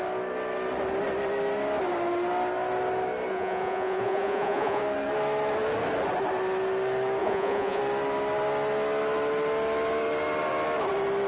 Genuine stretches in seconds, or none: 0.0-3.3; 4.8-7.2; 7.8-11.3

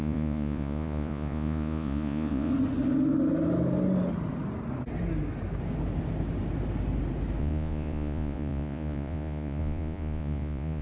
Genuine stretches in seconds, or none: 2.5-7.4

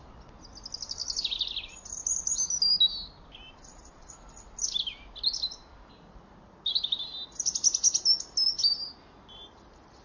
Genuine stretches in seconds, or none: 0.0-10.0

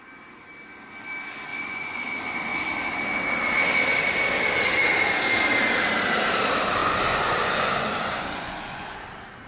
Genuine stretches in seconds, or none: 0.0-1.5; 2.0-6.8; 9.0-9.5